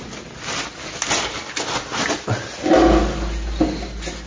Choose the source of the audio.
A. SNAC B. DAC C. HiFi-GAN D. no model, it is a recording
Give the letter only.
D